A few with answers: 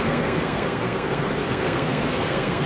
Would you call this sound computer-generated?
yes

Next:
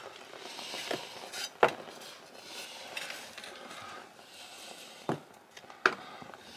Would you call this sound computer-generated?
no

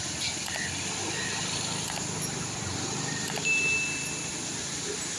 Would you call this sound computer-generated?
no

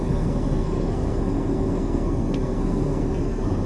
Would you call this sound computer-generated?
yes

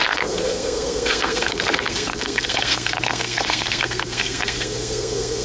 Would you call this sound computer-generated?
yes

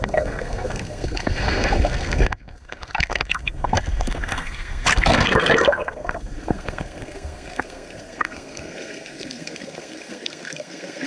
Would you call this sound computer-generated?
yes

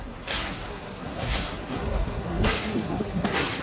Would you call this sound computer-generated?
yes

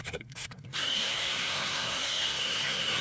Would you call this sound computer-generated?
yes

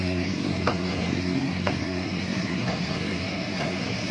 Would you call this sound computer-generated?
yes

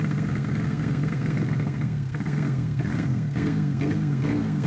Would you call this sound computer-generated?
yes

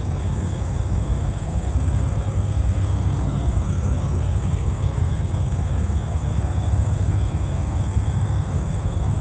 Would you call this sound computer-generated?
yes